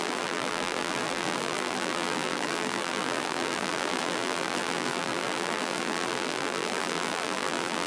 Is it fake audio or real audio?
fake